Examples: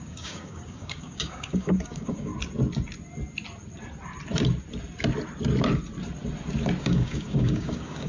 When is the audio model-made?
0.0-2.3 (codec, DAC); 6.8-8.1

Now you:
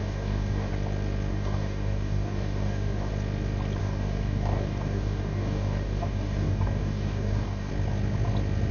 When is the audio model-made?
0.0-0.7 (codec, DAC); 1.3-3.1; 3.8-7.7

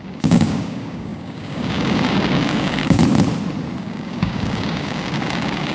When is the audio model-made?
0.0-3.0 (codec, DAC); 3.8-5.7

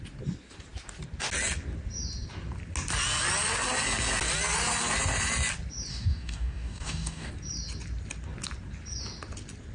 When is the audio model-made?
5.9-7.3 (codec, DAC)

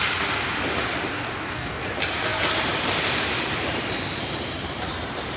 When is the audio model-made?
1.1-1.8 (codec, DAC)